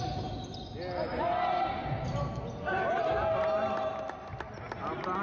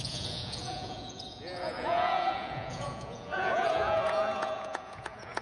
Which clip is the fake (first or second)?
second